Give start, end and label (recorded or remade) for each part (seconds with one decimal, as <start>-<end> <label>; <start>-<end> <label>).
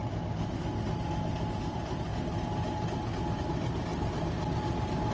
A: 0.0-0.9 recorded; 0.9-2.1 remade; 2.1-3.4 recorded; 3.4-3.9 remade; 3.9-5.1 recorded